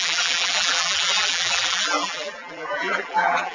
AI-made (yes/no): yes